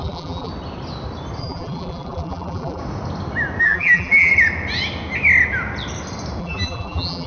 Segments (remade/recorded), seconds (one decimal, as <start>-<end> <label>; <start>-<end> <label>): 0.0-0.5 remade; 0.5-1.4 recorded; 1.4-2.8 remade; 2.8-3.6 recorded; 3.6-4.3 remade; 4.3-6.4 recorded; 6.4-7.3 remade